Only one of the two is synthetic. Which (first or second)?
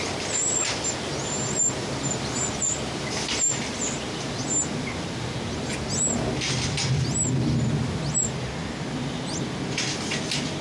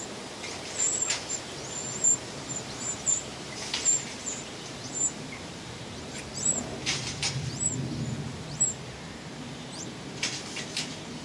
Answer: second